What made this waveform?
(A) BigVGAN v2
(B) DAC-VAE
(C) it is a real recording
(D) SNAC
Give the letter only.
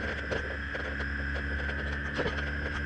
C